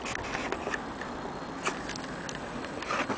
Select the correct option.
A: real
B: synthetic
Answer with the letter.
A